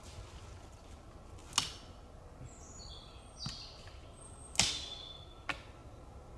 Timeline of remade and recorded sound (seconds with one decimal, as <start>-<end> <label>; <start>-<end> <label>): 0.0-6.4 recorded